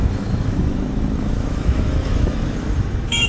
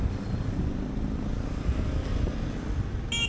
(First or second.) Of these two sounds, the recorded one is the second